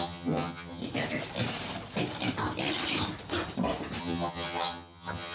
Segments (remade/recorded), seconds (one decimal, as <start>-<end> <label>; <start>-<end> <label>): 0.0-0.8 remade; 0.8-4.0 recorded; 4.0-5.3 remade